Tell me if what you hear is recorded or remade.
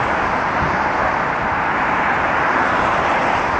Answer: recorded